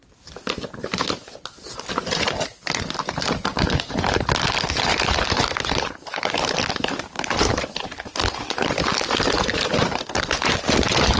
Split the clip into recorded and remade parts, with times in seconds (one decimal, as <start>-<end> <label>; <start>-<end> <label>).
0.0-3.9 recorded; 3.9-8.2 remade; 8.2-9.4 recorded; 9.4-11.2 remade